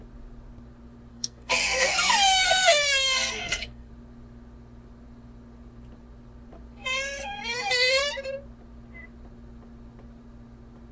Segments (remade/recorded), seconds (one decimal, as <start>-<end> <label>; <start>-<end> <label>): 0.0-1.1 recorded; 1.1-3.9 remade; 3.9-7.2 recorded; 7.2-8.0 remade; 8.0-10.9 recorded